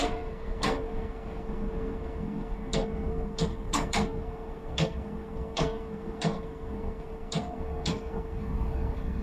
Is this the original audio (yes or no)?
no